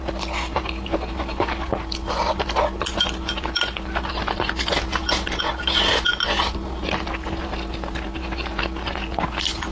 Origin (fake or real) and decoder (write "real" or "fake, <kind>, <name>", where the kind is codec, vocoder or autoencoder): real